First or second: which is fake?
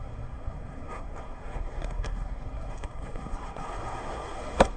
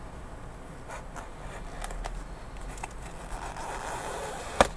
first